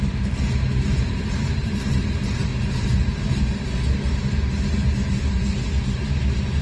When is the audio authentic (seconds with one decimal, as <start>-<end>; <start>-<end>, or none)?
none